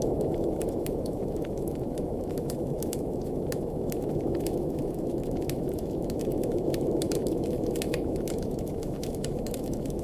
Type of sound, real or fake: fake